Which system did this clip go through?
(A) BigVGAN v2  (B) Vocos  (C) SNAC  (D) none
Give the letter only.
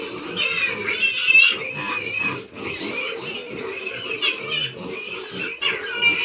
D